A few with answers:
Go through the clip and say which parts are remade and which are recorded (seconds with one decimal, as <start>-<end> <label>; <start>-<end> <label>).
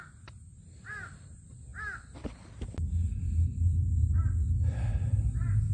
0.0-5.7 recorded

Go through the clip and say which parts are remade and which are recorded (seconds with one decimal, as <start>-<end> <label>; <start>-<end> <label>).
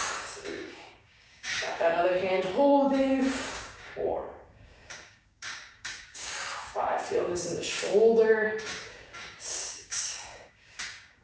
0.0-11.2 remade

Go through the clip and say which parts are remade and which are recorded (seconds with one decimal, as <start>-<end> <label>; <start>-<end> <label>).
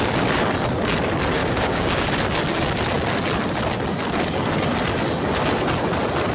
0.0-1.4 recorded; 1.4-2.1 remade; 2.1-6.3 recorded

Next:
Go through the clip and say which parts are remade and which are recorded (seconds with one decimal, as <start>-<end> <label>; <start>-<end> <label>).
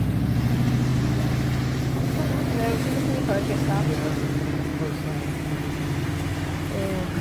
0.0-7.2 recorded